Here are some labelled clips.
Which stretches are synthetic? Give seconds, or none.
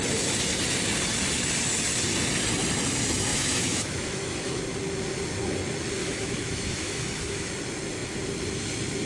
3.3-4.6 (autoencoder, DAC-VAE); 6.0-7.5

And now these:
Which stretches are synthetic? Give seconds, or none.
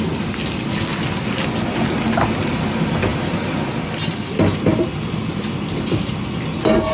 none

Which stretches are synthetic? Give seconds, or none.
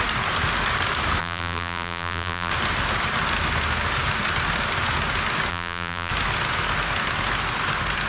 1.2-2.5 (vocoder, BigVGAN v2); 5.5-6.1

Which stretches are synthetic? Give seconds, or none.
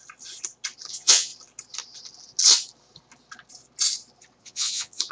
0.9-1.3 (vocoder, Vocos); 4.4-5.1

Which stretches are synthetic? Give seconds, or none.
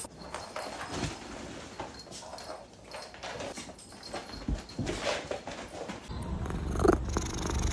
none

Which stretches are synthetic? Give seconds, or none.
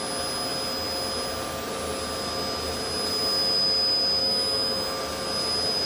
4.2-5.0 (autoencoder, DAC-VAE)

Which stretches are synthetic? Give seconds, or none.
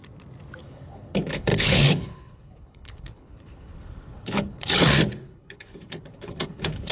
0.6-6.9 (codec, HILCodec)